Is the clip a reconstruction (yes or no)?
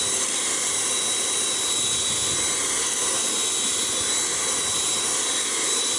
no